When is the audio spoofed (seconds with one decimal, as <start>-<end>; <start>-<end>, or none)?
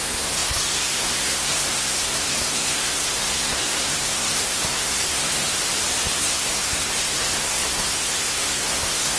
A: 0.0-5.5; 6.2-9.2